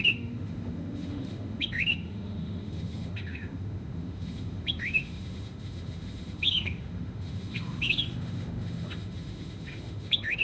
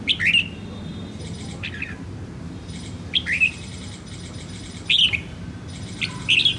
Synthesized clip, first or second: first